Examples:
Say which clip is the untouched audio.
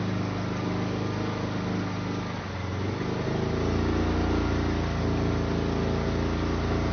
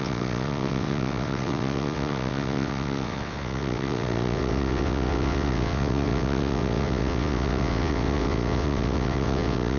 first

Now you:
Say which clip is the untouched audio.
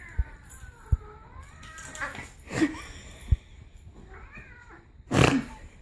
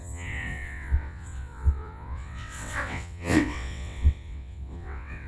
first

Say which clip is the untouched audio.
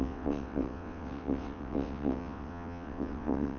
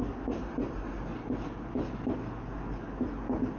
second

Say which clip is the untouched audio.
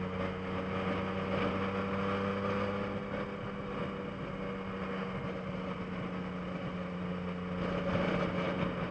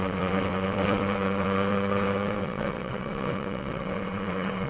first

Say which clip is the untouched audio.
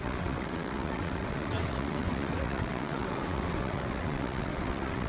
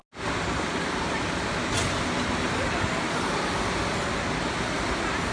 second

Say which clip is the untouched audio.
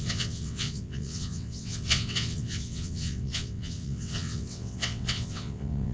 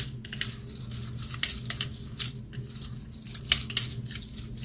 second